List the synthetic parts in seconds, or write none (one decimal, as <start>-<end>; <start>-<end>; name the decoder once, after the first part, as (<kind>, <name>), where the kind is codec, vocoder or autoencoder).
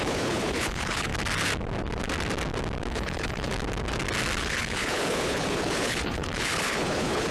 0.0-1.1 (codec, HILCodec); 2.9-3.5; 4.4-7.3